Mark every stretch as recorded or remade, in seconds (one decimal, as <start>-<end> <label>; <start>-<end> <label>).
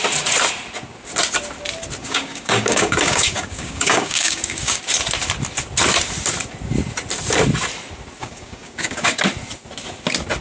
0.0-2.0 recorded; 2.0-4.8 remade; 4.8-8.2 recorded; 8.2-9.2 remade; 9.2-10.4 recorded